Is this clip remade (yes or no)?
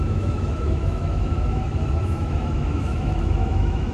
yes